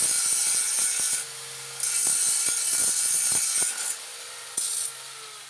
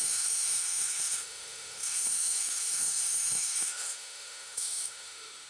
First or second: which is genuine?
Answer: first